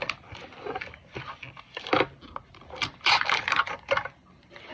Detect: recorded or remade recorded